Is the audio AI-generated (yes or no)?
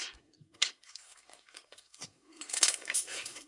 yes